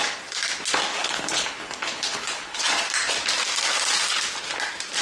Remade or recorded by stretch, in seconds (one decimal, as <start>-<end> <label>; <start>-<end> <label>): 0.0-0.9 recorded; 0.9-2.6 remade; 2.6-5.0 recorded